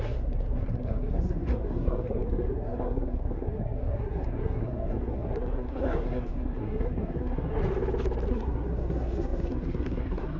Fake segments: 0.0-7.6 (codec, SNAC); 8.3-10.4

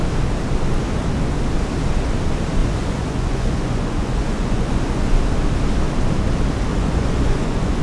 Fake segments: 2.6-5.2 (vocoder, Vocos); 6.7-7.8

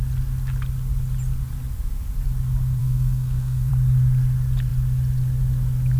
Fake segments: 2.8-3.7 (codec, SNAC)

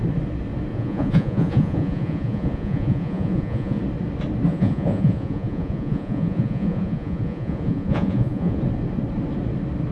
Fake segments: 0.7-3.8 (vocoder, Vocos); 4.5-8.6

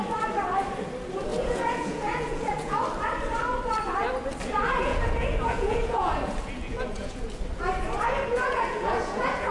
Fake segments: 1.3-2.8 (vocoder, Vocos); 4.8-7.3; 8.3-9.5

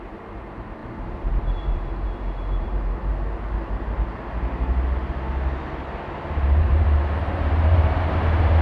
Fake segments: 0.0-3.1 (vocoder, BigVGAN v2); 6.4-8.6

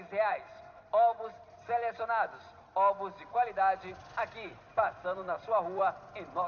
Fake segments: 3.9-5.9 (vocoder, BigVGAN v2)

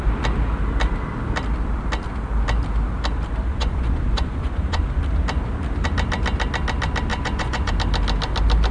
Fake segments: 3.5-4.8 (vocoder, Vocos); 7.1-7.7